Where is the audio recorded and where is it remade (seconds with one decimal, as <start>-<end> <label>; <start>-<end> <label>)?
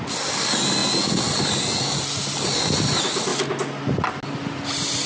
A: 0.0-5.1 recorded